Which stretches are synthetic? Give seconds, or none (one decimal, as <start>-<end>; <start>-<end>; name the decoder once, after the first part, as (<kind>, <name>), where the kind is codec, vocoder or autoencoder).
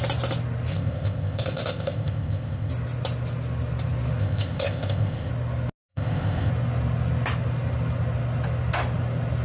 0.7-2.7 (codec, ZipCodec); 4.2-5.3; 5.9-6.5